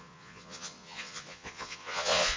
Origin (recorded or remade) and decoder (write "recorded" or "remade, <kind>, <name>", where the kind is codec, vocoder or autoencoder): remade, vocoder, Vocos